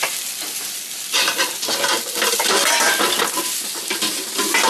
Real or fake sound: fake